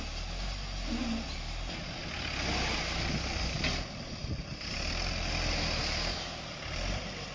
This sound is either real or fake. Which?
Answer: real